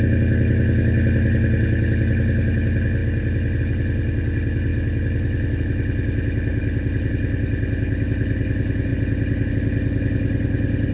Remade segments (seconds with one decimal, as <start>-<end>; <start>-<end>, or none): 3.0-3.6; 6.5-7.1